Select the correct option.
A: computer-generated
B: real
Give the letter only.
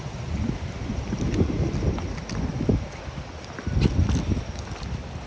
B